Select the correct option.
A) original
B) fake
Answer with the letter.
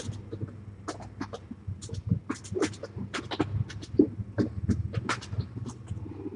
A